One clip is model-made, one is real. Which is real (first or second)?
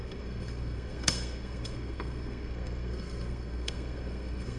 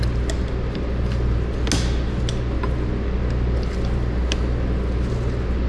second